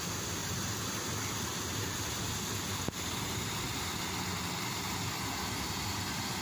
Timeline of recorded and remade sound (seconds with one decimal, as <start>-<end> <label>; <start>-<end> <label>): 0.0-6.4 recorded

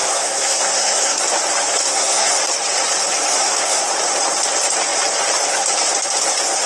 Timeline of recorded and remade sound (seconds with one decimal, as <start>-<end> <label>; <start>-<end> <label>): 0.0-1.2 remade; 1.2-1.8 recorded; 1.8-2.4 remade; 2.4-3.3 recorded; 3.3-3.8 remade; 3.8-6.7 recorded

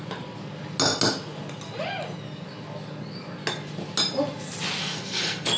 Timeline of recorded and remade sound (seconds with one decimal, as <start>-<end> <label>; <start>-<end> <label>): 0.0-4.8 recorded; 4.8-5.6 remade

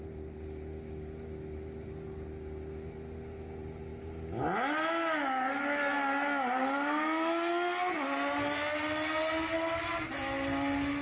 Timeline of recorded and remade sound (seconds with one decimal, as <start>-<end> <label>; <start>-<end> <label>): 0.0-11.0 recorded